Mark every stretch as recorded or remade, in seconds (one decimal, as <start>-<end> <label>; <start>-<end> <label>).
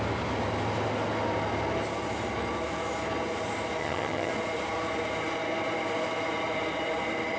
0.0-3.8 recorded; 3.8-4.3 remade; 4.3-7.4 recorded